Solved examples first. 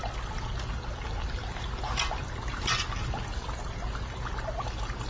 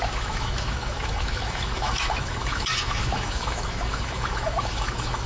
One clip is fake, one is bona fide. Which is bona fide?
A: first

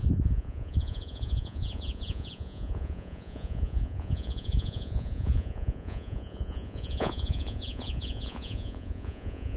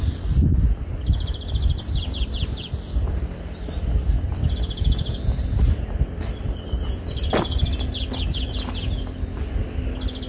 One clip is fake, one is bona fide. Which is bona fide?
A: second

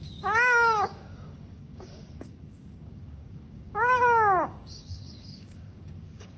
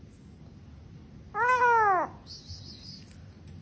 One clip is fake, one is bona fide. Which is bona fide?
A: second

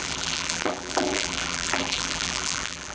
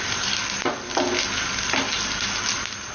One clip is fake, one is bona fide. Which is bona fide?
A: second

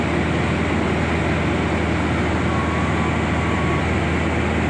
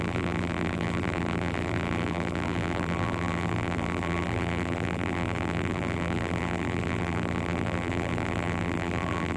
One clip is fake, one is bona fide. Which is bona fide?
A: first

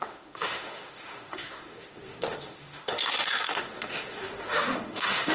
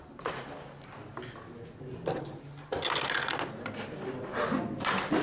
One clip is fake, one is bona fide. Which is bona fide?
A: second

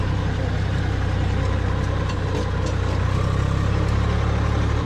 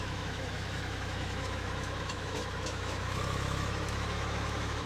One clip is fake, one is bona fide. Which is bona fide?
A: first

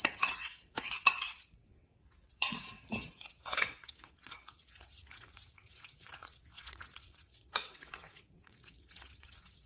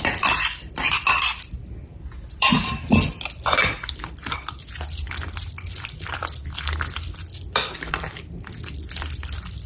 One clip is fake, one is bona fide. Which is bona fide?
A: second